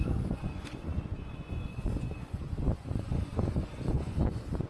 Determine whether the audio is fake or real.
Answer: fake